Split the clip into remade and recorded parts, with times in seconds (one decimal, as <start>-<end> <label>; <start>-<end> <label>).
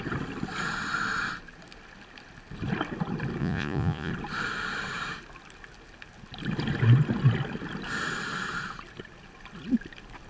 0.0-3.4 recorded; 3.4-4.1 remade; 4.1-10.3 recorded